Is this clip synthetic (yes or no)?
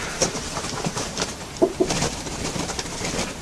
yes